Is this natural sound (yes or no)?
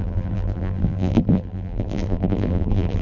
no